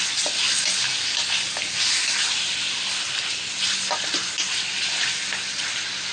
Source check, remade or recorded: recorded